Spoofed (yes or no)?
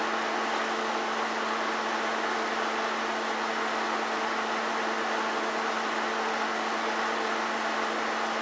no